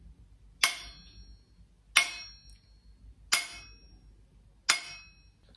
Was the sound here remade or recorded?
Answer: recorded